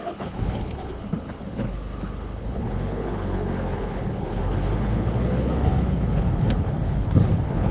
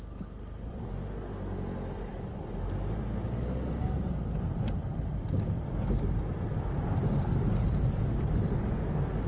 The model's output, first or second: first